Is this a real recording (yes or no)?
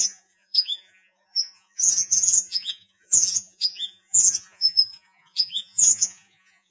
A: no